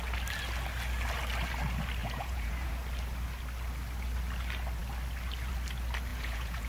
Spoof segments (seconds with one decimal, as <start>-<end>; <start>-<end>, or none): 2.0-2.7; 6.1-6.7